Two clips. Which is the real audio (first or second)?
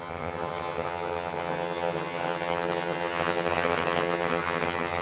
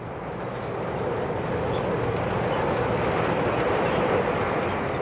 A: second